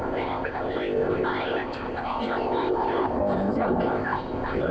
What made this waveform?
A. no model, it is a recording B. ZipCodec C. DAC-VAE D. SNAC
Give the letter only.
B